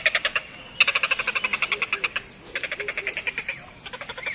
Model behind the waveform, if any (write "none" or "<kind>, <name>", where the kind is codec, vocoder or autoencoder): none